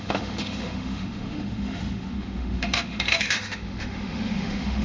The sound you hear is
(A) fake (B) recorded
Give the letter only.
A